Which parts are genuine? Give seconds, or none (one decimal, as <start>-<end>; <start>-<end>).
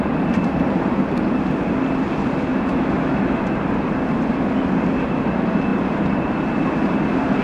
0.0-2.5; 3.4-7.4